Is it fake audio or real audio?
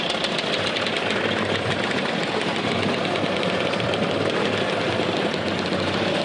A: real